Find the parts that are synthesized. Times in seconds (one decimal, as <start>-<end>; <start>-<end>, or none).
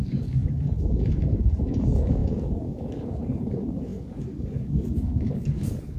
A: 0.0-6.0